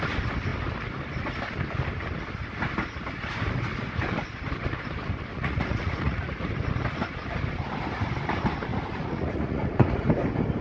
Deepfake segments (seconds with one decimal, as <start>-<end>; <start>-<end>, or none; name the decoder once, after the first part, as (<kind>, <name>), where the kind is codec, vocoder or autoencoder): 5.3-6.5 (vocoder, Vocos); 8.7-10.1